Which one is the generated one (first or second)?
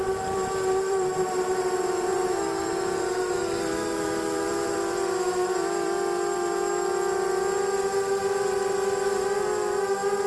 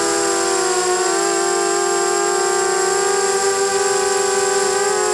first